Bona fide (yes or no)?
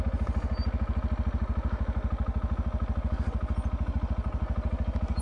yes